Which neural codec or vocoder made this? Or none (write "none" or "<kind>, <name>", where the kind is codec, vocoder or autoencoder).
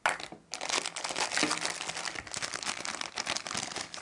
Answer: none